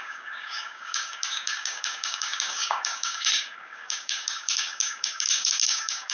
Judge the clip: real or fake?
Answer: fake